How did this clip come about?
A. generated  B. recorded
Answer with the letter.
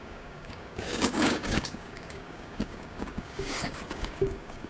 A